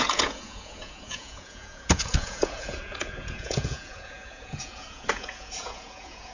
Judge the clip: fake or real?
fake